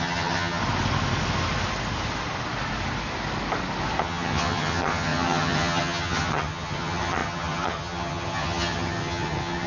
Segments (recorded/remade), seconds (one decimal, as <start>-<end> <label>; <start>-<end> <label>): 0.0-0.6 remade; 0.6-4.0 recorded; 4.0-9.7 remade